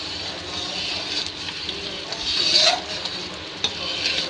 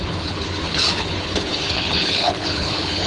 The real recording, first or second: first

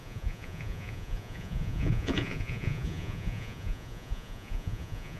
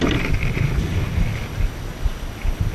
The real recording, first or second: second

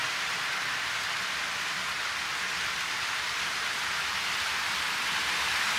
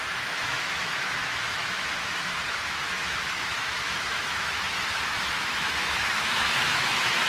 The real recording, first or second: first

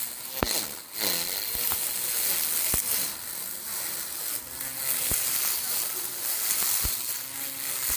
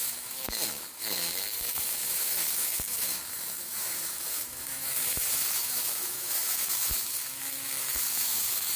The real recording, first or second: first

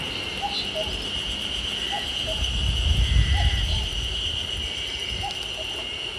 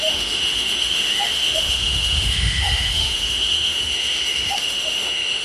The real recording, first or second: first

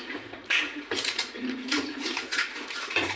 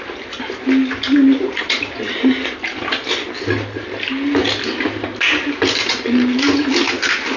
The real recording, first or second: second